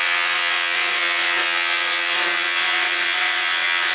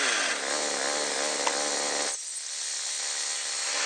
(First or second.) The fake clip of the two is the first